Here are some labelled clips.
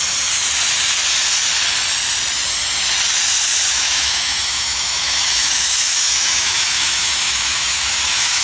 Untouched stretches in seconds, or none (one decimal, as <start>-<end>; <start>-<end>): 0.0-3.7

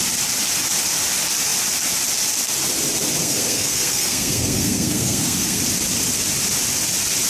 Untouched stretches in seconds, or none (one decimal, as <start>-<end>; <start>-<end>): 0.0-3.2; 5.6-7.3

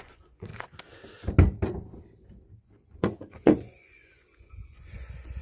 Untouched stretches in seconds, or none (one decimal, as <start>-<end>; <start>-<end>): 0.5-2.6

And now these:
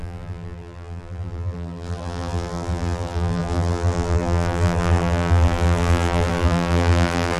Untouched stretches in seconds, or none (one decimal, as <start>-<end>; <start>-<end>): none